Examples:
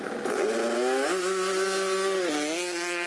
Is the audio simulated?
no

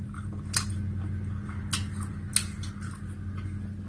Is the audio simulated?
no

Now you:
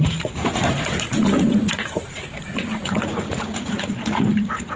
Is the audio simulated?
yes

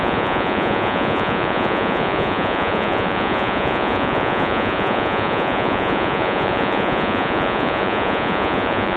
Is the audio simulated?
yes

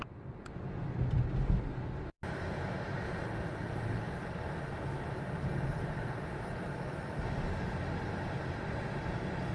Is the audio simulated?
no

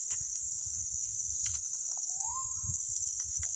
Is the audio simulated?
yes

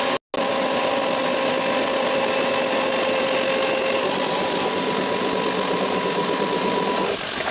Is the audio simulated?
no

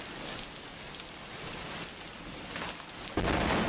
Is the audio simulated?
no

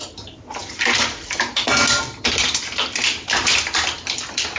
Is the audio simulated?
yes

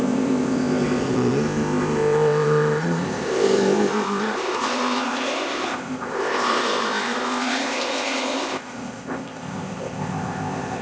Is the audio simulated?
yes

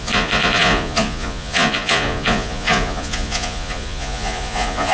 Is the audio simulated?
yes